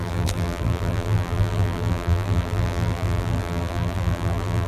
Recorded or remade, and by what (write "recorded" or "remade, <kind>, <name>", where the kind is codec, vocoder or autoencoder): remade, vocoder, BigVGAN v2